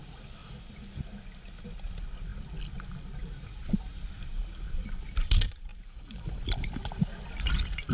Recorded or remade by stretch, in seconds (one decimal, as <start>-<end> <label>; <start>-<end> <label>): 0.0-5.7 recorded; 5.7-6.9 remade; 6.9-7.9 recorded